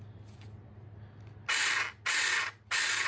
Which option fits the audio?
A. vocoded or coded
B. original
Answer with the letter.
B